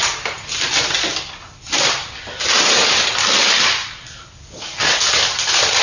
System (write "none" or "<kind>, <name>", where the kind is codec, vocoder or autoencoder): none